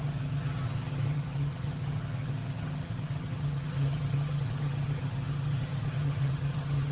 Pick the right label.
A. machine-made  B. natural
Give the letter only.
A